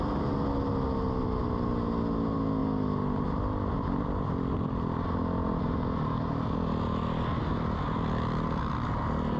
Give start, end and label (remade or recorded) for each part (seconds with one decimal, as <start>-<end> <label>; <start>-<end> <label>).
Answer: 0.0-9.4 recorded